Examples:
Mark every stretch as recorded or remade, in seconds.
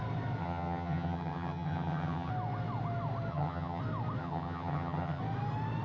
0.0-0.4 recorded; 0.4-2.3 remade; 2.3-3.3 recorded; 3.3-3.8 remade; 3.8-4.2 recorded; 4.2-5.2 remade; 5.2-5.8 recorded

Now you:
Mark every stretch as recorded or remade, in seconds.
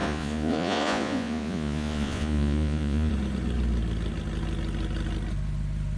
0.0-3.1 remade; 3.1-6.0 recorded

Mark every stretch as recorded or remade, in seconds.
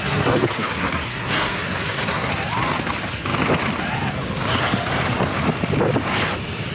0.0-2.3 remade; 2.3-6.7 recorded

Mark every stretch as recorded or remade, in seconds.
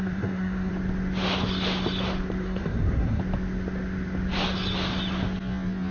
0.0-0.7 remade; 0.7-2.4 recorded; 2.4-3.2 remade; 3.2-5.9 recorded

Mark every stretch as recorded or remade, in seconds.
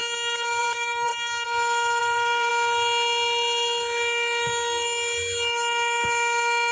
0.0-0.6 recorded; 0.6-1.1 remade; 1.1-2.0 recorded; 2.0-2.5 remade; 2.5-6.7 recorded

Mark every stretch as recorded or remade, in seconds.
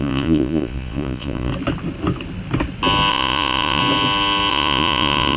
0.0-1.5 remade; 1.5-3.1 recorded; 3.1-3.8 remade; 3.8-4.5 recorded; 4.5-5.4 remade